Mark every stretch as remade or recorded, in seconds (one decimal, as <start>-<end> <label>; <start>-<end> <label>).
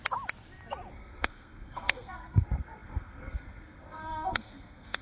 0.0-0.9 recorded; 0.9-5.0 remade